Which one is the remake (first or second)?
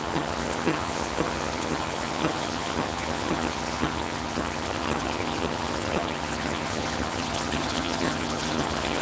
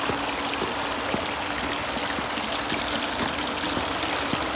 first